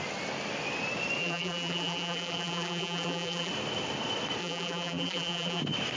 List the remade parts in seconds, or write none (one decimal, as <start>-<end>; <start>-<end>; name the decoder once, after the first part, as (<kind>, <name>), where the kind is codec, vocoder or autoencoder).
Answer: 1.2-3.5 (vocoder, BigVGAN v2); 4.4-5.6